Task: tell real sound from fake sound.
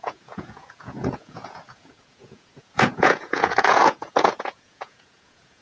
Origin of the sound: fake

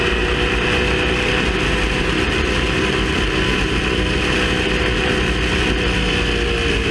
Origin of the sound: real